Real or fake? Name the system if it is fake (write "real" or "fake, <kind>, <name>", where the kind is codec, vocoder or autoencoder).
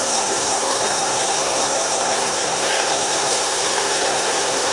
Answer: fake, codec, SNAC